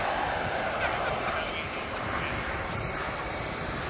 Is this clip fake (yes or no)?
no